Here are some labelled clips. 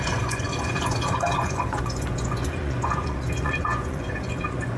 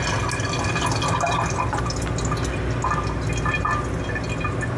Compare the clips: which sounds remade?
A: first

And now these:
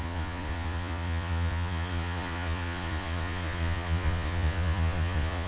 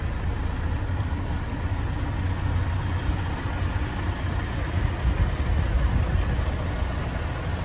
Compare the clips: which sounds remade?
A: first